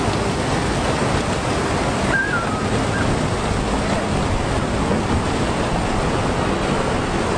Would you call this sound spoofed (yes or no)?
no